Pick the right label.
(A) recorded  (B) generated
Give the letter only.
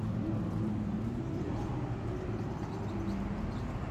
A